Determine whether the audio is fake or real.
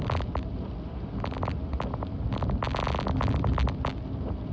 real